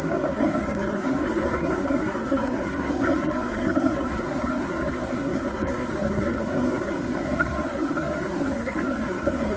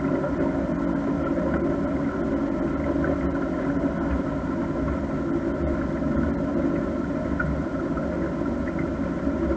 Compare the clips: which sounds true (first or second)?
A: second